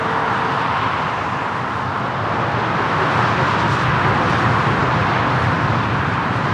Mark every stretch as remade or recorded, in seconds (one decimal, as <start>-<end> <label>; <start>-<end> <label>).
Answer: 0.0-6.5 recorded